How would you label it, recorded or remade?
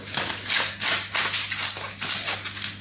recorded